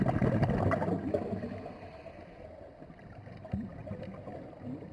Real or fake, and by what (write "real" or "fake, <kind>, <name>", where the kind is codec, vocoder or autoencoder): real